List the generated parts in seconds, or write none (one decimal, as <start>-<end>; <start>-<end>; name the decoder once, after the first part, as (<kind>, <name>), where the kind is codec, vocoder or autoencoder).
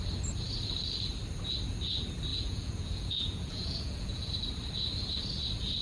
2.3-4.3 (vocoder, Vocos)